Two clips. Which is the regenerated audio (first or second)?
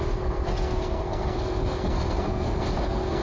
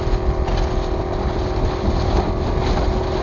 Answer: first